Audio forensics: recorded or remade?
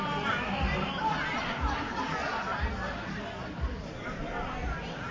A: recorded